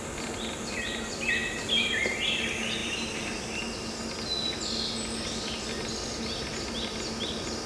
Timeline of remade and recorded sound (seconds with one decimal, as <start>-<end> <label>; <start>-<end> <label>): 0.0-2.8 recorded; 2.8-3.6 remade; 3.6-7.7 recorded